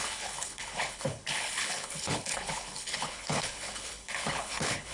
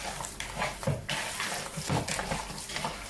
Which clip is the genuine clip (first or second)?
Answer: second